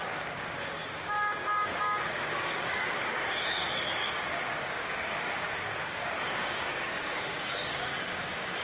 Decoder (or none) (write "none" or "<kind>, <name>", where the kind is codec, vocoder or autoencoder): codec, DAC